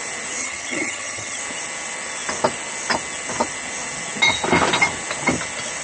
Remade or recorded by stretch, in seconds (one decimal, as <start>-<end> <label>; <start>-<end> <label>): 0.0-0.4 recorded; 0.4-1.4 remade; 1.4-5.8 recorded